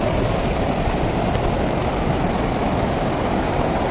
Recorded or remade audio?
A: recorded